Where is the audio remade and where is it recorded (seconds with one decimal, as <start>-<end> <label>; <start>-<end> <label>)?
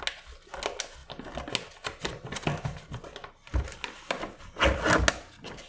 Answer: 0.0-5.7 recorded